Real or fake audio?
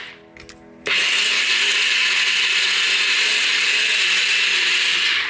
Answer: real